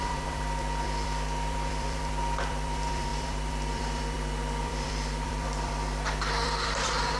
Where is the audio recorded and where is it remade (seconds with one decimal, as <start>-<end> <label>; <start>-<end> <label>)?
0.0-7.2 remade